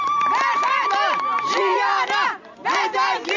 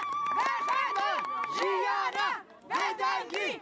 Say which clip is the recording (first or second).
second